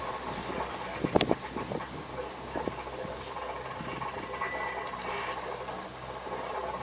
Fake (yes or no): no